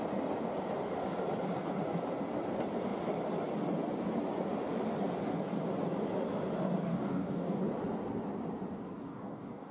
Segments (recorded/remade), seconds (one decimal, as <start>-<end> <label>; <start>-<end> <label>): 0.0-6.9 recorded; 6.9-7.6 remade; 7.6-9.1 recorded; 9.1-9.7 remade